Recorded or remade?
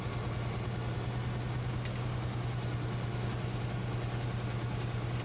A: recorded